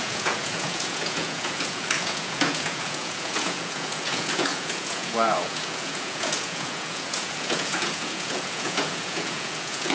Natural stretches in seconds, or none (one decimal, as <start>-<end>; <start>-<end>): none